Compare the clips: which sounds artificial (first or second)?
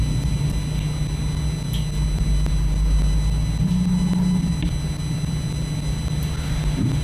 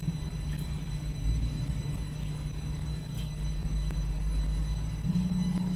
second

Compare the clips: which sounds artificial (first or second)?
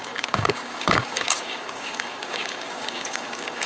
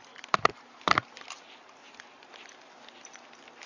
first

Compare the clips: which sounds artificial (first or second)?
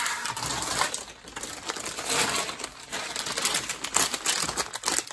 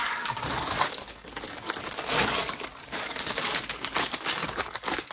second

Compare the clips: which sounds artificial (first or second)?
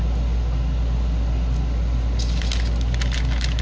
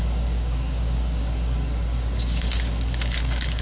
second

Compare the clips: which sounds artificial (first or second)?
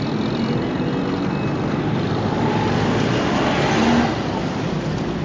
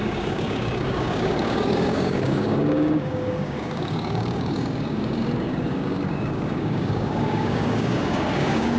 second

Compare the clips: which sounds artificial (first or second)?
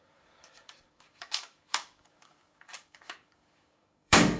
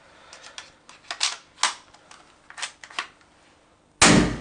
first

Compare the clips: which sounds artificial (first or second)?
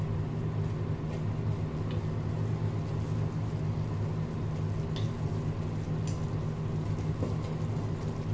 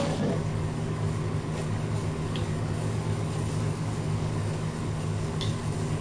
second